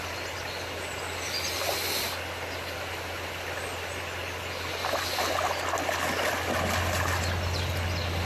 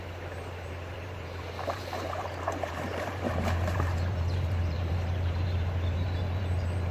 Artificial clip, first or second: second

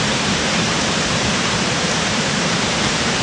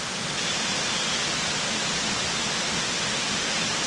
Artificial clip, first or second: first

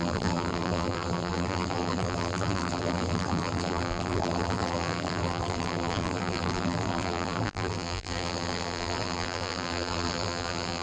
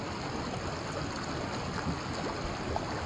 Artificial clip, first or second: first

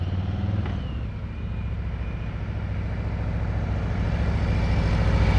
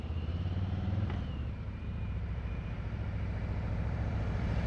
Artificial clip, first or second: second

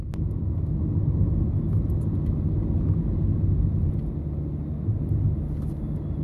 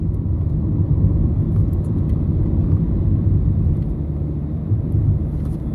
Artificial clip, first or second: second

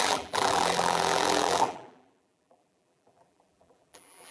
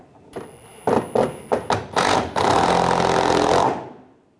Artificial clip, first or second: first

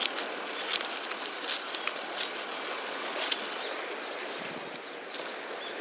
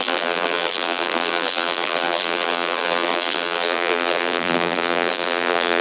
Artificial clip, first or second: second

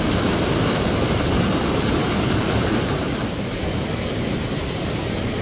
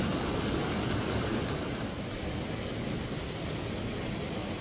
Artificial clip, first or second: first